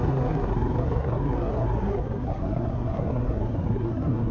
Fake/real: fake